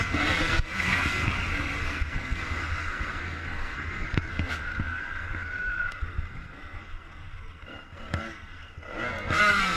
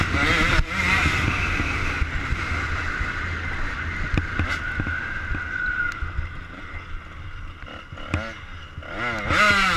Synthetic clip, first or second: first